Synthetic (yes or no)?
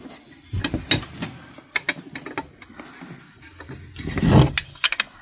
no